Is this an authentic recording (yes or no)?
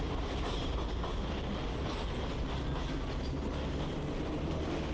yes